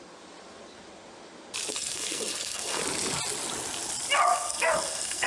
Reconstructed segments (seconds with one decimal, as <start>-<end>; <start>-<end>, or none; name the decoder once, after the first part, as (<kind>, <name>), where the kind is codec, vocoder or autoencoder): 1.7-2.8 (codec, SNAC); 4.3-5.3